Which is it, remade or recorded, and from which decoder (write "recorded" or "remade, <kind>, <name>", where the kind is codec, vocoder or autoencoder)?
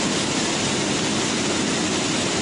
recorded